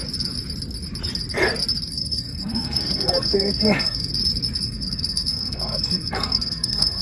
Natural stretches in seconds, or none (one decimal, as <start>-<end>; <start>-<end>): 0.0-1.9; 4.1-4.6